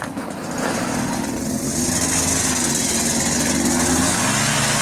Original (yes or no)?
yes